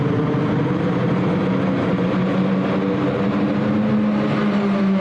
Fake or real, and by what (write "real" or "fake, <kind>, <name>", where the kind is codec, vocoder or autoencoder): real